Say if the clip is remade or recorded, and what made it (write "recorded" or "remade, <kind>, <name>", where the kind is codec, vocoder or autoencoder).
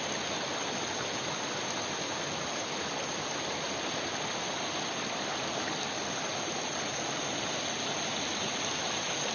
recorded